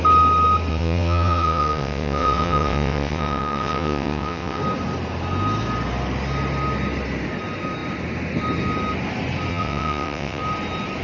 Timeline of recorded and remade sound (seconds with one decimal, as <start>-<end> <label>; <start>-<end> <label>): 0.0-0.7 recorded; 0.7-4.6 remade; 4.6-9.5 recorded; 9.5-10.4 remade; 10.4-11.0 recorded